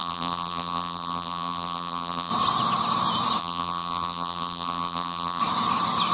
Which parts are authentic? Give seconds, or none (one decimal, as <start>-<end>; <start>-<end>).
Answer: 2.3-3.4; 5.4-6.1